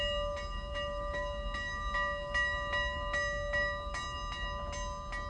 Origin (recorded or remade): recorded